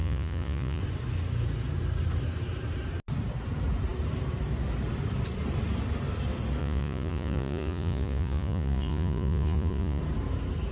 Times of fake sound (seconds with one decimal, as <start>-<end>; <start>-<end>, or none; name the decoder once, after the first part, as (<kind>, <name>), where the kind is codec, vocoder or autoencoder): 0.0-0.8 (vocoder, Vocos); 6.6-10.0